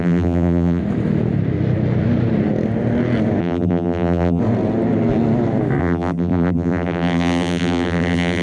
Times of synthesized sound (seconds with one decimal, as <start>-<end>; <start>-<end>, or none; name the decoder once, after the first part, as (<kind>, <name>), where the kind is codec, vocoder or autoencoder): 0.0-0.8 (vocoder, BigVGAN v2); 3.4-4.4; 5.8-8.4

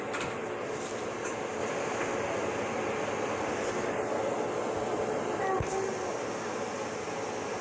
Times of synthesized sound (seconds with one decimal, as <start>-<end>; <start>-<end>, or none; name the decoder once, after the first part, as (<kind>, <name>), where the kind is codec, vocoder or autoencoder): none

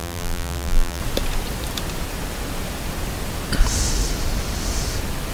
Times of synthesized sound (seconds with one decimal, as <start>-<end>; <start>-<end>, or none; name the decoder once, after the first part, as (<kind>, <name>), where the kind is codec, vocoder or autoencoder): 0.0-1.0 (vocoder, BigVGAN v2)